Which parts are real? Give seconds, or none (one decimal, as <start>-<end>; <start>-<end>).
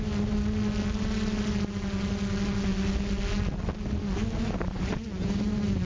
0.0-5.8